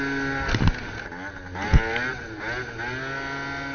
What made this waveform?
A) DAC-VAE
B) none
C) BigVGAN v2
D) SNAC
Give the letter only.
B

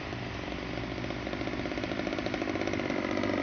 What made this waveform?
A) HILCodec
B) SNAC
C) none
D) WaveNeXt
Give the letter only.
C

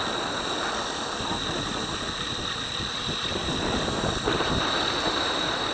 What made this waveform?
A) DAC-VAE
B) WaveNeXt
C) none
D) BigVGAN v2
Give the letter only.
C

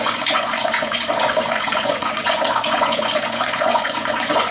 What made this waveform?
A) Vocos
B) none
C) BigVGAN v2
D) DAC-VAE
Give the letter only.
A